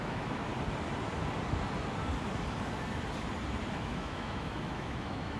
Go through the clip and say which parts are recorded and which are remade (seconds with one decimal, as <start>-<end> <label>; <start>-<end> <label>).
0.0-0.5 remade; 0.5-3.7 recorded; 3.7-5.4 remade